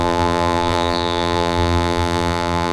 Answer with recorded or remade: remade